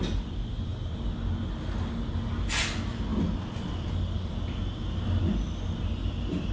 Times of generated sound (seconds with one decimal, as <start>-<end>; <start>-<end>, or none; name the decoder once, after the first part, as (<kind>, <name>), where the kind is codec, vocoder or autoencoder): none